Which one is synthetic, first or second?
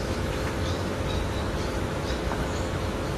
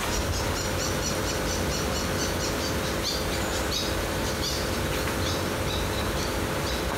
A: first